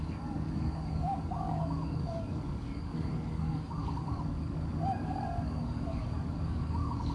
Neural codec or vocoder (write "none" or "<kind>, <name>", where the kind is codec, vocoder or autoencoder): codec, DAC